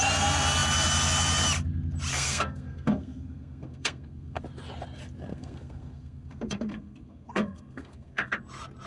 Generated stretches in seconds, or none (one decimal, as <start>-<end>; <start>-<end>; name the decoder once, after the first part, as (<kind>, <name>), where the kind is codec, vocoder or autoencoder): 2.1-4.4 (codec, SNAC); 5.3-8.4